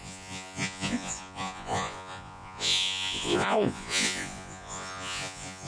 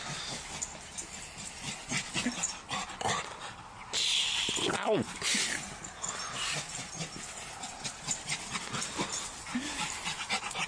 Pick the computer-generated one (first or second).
first